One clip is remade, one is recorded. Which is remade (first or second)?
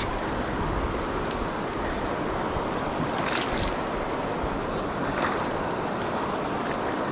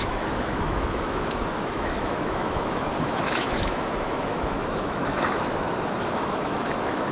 second